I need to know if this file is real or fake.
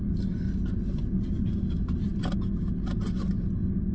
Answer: real